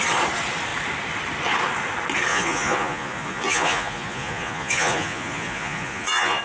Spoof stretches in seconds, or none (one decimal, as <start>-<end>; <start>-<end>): 2.3-6.4